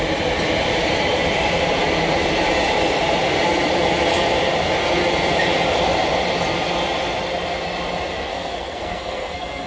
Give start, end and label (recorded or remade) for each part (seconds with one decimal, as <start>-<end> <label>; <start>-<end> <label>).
0.0-8.3 recorded; 8.3-9.7 remade